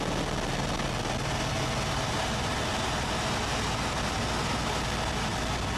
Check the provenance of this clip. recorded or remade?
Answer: recorded